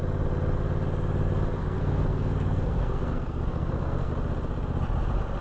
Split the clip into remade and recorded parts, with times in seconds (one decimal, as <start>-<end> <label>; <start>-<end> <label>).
0.0-1.6 recorded; 1.6-4.1 remade; 4.1-5.4 recorded